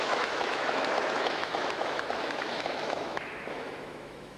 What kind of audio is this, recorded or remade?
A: remade